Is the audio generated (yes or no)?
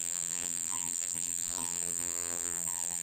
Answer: yes